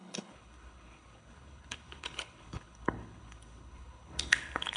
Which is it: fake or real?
fake